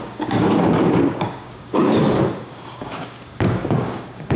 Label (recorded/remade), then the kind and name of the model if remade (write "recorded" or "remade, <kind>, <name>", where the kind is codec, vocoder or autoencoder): remade, codec, DAC